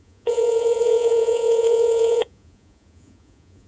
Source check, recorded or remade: remade